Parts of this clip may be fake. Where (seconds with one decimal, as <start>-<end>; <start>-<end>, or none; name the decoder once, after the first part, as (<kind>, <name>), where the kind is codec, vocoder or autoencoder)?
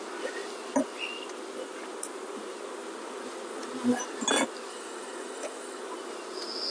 4.7-5.8 (autoencoder, DAC-VAE)